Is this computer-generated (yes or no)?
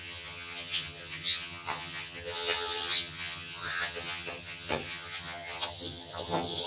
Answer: yes